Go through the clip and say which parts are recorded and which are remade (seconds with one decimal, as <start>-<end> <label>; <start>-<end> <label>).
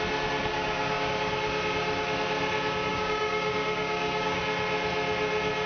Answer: 0.0-0.5 recorded; 0.5-1.1 remade; 1.1-2.9 recorded; 2.9-4.4 remade; 4.4-5.7 recorded